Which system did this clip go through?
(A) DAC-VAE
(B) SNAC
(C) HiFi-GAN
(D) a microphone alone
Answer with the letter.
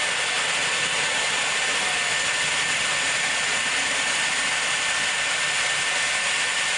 D